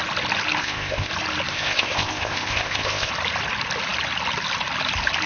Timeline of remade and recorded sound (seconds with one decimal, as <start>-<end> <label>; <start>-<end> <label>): 0.0-0.6 recorded; 0.6-1.1 remade; 1.1-1.5 recorded; 1.5-3.1 remade; 3.1-5.3 recorded